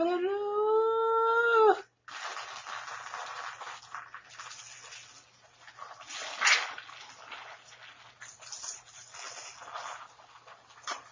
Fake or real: real